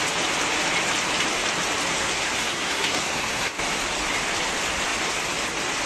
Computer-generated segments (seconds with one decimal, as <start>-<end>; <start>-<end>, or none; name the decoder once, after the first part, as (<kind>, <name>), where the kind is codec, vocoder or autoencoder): 1.9-3.6 (codec, SNAC)